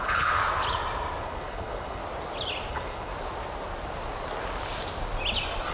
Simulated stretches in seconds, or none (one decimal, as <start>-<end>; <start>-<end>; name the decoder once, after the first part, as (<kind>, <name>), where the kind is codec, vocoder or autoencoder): 0.0-0.4 (codec, HILCodec); 1.2-2.0; 2.7-3.1